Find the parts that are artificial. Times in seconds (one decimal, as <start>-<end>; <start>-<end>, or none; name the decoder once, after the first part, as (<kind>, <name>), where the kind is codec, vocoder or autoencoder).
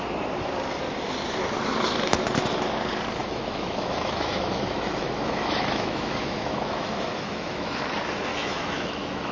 3.2-7.8 (autoencoder, DAC-VAE); 8.3-9.3